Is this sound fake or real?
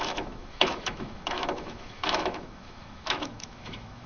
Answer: fake